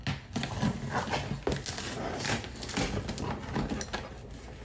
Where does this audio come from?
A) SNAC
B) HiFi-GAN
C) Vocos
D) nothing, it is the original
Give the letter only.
D